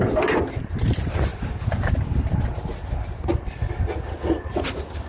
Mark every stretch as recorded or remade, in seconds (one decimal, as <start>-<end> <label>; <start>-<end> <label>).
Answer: 0.0-5.1 recorded